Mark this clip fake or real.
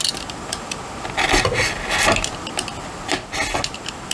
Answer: real